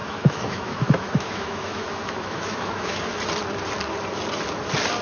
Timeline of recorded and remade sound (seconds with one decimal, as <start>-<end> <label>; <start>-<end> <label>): 0.0-3.0 remade; 3.0-5.0 recorded